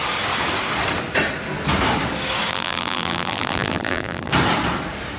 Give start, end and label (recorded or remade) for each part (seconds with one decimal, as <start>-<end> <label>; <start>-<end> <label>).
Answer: 0.0-2.5 recorded; 2.5-4.3 remade; 4.3-5.2 recorded